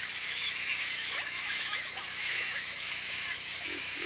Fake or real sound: fake